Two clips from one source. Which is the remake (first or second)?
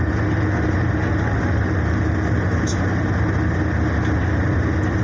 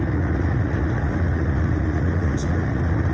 second